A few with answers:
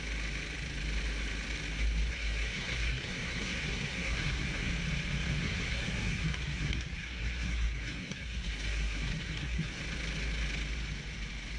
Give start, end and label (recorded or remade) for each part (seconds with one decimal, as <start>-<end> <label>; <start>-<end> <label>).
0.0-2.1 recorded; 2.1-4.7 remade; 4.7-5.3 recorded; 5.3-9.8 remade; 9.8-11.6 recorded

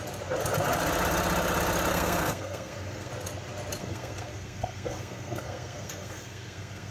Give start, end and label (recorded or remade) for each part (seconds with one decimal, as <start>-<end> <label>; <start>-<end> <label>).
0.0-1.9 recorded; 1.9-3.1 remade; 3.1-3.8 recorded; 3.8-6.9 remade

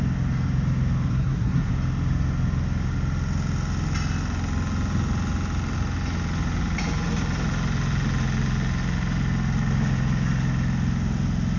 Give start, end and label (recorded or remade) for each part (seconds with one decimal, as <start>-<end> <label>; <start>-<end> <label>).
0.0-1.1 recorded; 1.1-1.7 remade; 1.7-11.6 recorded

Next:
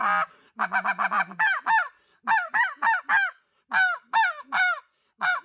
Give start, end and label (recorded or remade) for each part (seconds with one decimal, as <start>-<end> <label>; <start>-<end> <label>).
0.0-5.4 recorded

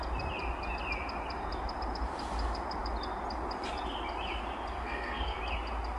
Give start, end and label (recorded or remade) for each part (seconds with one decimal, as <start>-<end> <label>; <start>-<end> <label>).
0.0-4.8 recorded; 4.8-5.4 remade; 5.4-6.0 recorded

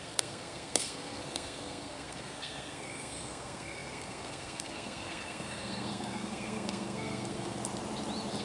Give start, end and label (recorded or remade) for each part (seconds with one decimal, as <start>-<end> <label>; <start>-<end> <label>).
0.0-7.6 remade; 7.6-8.4 recorded